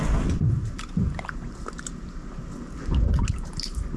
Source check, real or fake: real